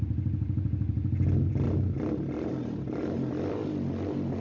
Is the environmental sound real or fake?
real